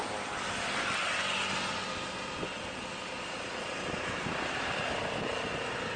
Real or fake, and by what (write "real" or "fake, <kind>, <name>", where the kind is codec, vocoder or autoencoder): real